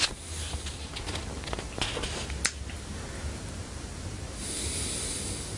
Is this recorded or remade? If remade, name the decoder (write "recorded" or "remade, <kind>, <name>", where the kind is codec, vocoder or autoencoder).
recorded